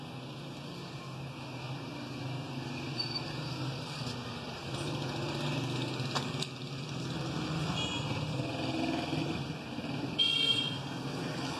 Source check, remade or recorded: recorded